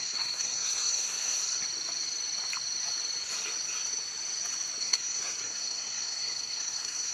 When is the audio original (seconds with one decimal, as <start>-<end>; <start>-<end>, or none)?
1.4-4.8